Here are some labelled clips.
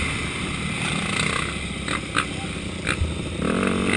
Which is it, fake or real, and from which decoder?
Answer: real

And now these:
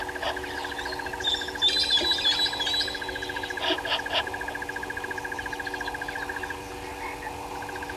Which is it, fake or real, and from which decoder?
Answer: real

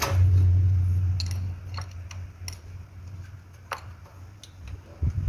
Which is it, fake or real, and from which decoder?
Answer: real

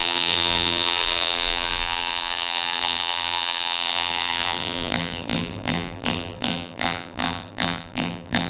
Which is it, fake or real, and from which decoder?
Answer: fake, vocoder, BigVGAN v2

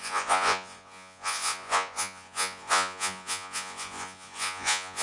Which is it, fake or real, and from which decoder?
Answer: fake, vocoder, Vocos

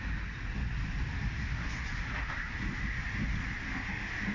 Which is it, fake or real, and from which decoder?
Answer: real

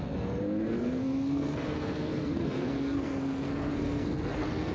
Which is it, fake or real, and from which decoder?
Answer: fake, codec, SNAC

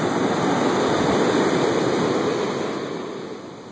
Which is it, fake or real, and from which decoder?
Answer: real